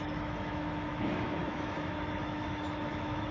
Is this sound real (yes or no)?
no